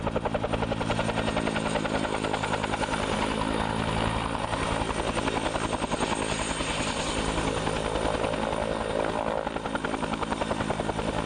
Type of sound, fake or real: real